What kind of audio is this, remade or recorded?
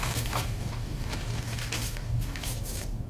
remade